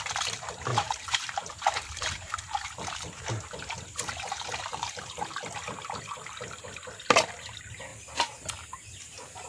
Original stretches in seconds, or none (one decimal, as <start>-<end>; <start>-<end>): 0.0-0.7; 5.0-9.5